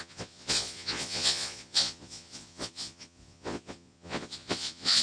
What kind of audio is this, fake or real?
fake